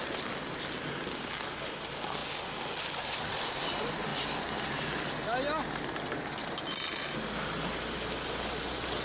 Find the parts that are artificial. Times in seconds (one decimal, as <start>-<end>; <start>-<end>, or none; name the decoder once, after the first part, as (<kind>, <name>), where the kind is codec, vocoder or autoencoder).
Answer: none